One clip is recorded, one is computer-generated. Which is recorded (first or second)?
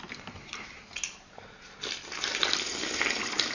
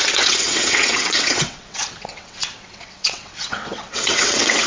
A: first